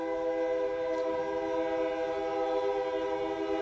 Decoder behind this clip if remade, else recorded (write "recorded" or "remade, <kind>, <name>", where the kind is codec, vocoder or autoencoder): recorded